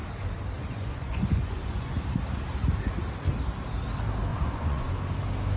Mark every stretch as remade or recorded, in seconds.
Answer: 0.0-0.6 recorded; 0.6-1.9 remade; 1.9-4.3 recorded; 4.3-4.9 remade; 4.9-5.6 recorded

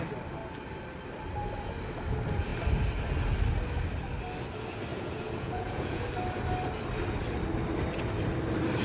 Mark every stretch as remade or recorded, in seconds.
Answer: 0.0-4.9 recorded; 4.9-6.0 remade; 6.0-8.8 recorded

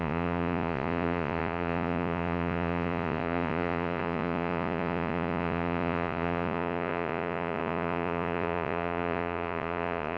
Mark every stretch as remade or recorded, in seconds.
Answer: 0.0-10.2 remade

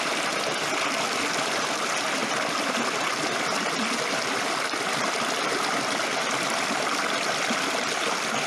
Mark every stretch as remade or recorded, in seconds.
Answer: 0.0-8.5 recorded